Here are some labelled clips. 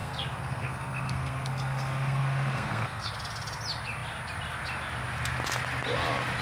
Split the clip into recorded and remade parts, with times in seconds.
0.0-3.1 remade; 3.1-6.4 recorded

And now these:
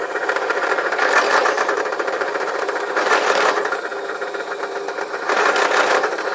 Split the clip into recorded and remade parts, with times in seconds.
0.0-3.9 remade; 3.9-5.7 recorded; 5.7-6.3 remade